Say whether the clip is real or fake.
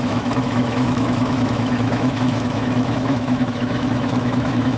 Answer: fake